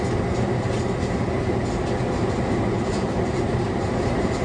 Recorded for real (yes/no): yes